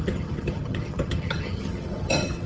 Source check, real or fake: fake